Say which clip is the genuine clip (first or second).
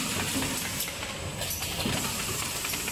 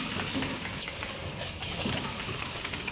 first